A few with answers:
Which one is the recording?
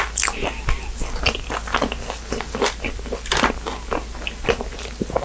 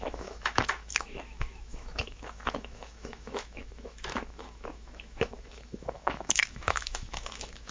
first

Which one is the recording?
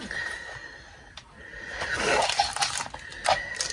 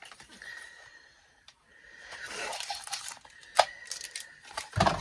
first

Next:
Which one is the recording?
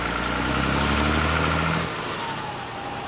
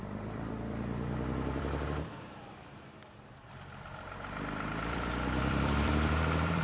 first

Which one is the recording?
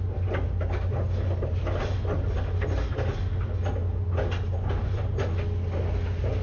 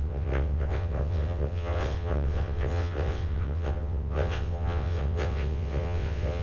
first